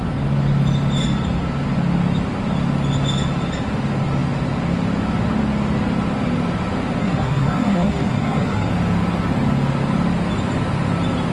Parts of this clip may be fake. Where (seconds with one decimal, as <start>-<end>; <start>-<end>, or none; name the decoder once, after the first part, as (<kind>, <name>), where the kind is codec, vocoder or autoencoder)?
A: 7.0-8.7 (codec, SNAC)